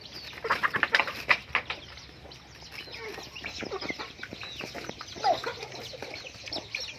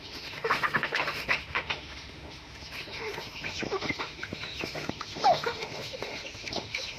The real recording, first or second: first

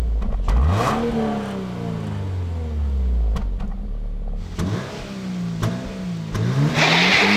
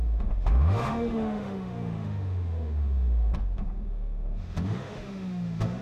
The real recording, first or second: first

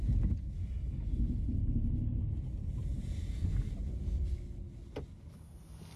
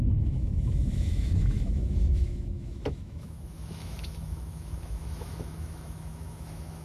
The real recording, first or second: first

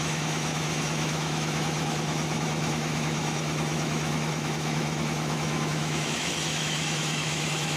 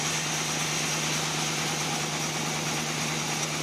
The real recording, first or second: second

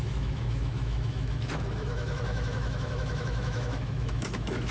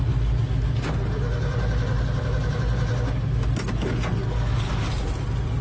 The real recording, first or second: second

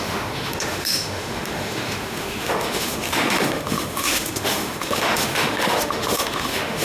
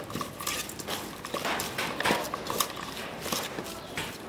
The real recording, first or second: second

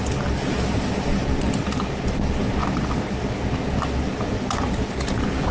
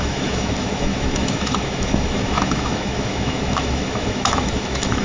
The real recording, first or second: first